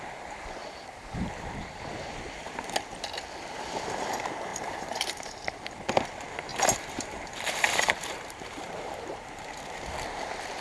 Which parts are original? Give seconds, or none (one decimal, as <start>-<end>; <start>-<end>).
0.0-0.6; 1.3-4.5; 5.5-6.5; 9.6-10.6